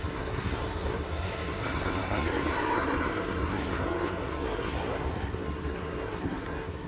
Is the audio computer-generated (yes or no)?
yes